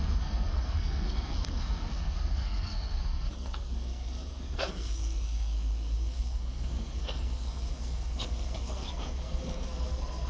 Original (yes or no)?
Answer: no